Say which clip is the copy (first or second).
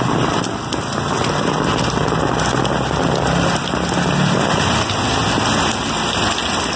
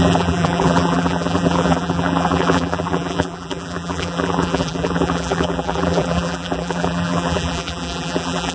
second